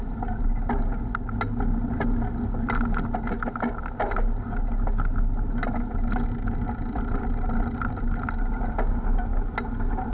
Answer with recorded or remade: recorded